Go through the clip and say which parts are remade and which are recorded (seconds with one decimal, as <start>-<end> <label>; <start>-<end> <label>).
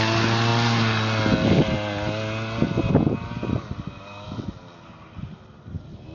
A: 0.0-6.1 recorded